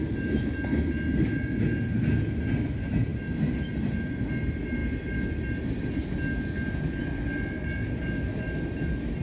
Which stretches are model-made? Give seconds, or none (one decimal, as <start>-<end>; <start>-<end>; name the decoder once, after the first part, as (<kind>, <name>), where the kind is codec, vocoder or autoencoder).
none